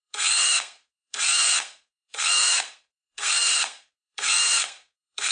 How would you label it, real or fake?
fake